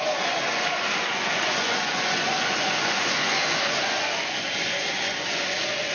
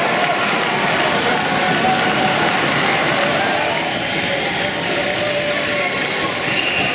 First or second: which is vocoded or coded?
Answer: first